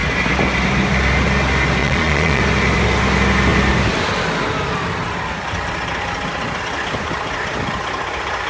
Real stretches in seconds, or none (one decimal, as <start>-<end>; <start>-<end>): 0.0-1.8; 2.4-8.5